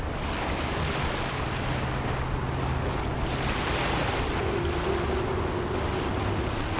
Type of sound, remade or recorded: recorded